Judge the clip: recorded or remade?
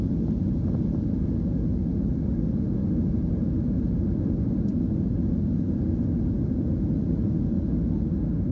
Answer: recorded